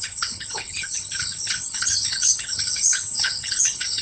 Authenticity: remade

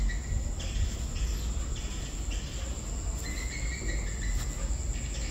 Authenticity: recorded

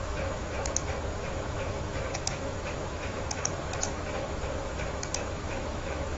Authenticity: remade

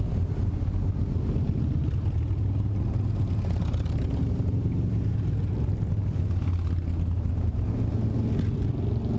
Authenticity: recorded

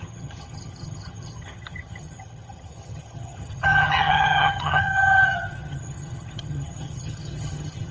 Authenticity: remade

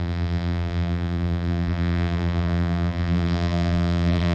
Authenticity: remade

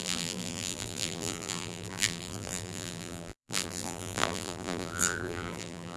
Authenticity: remade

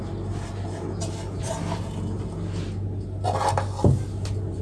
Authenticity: recorded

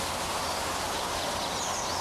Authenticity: recorded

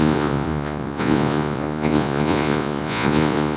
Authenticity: remade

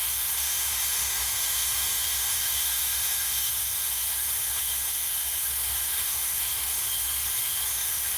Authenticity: remade